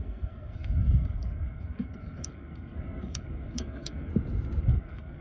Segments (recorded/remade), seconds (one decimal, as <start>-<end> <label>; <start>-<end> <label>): 0.0-4.1 remade; 4.1-4.6 recorded; 4.6-5.2 remade